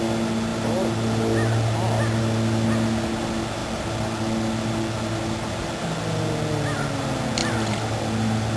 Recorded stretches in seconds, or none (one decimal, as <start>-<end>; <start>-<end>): 0.0-0.5; 2.2-3.6; 5.6-8.6